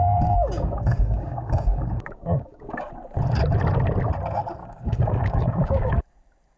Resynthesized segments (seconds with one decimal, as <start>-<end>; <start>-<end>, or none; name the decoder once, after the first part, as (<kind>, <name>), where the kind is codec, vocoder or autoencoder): 0.0-2.9 (codec, DAC); 4.6-5.9

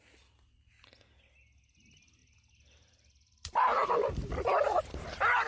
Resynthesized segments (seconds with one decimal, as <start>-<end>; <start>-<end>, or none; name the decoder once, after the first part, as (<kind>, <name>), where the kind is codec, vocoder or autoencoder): 2.2-4.8 (vocoder, BigVGAN v2)

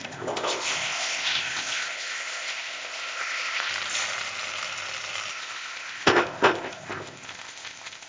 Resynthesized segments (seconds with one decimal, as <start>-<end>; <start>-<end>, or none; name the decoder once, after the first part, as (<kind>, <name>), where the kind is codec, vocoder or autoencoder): 0.0-3.7 (codec, ZipCodec); 5.3-8.1

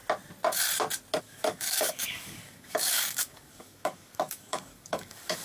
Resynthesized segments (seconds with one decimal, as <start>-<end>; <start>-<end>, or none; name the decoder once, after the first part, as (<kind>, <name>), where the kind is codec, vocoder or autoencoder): 1.2-5.4 (codec, DAC)